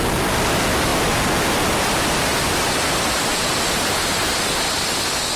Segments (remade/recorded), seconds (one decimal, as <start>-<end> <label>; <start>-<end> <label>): 0.0-5.4 recorded